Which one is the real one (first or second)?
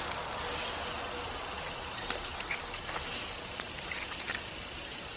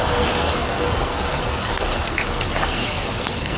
first